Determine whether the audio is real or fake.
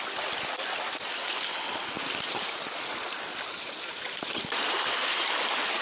real